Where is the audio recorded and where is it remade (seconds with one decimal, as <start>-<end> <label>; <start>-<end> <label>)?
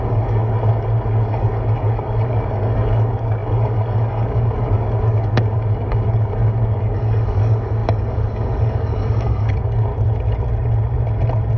0.0-9.9 remade; 9.9-11.6 recorded